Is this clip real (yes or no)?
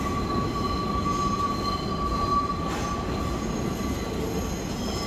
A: yes